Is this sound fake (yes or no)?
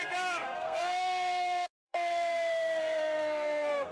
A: yes